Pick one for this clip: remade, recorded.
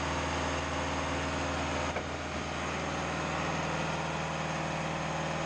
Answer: recorded